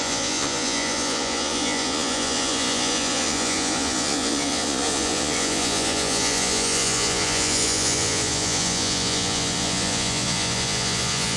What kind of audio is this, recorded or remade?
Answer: remade